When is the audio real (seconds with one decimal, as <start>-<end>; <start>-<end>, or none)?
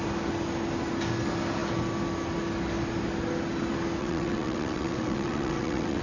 0.0-4.0